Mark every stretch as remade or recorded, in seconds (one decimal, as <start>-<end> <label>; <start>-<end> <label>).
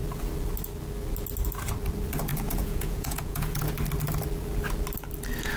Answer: 0.0-2.3 recorded; 2.3-3.7 remade; 3.7-5.6 recorded